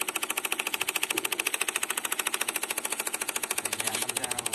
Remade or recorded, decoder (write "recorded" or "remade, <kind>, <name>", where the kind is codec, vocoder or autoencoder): remade, vocoder, Vocos